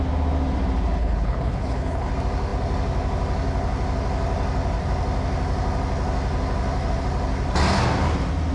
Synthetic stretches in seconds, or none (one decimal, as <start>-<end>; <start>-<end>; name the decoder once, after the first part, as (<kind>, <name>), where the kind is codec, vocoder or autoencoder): 1.0-2.1 (codec, HILCodec)